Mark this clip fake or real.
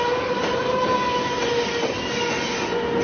real